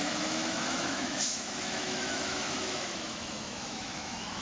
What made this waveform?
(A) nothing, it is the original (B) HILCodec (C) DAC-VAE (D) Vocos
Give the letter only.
C